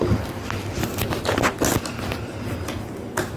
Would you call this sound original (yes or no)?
yes